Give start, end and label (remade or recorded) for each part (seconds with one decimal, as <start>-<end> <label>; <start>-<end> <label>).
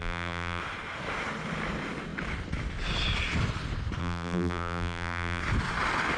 0.0-0.6 remade; 0.6-4.0 recorded; 4.0-5.4 remade; 5.4-6.2 recorded